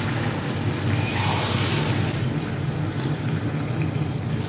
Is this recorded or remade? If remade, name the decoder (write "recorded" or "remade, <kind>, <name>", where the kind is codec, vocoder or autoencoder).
recorded